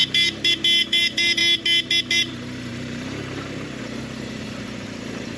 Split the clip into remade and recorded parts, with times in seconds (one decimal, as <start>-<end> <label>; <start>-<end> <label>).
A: 0.0-0.8 recorded; 0.8-1.4 remade; 1.4-2.2 recorded; 2.2-5.4 remade